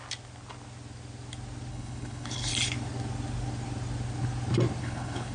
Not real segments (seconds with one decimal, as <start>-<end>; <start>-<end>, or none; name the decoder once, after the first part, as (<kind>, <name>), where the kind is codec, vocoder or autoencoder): 1.7-2.5 (codec, HILCodec); 4.8-5.3